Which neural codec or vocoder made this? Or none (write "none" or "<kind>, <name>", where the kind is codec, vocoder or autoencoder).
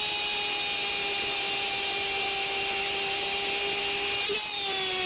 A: none